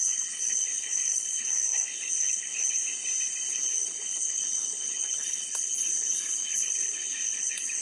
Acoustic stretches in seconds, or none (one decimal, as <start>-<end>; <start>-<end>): 2.8-3.5